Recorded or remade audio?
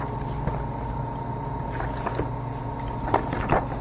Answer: recorded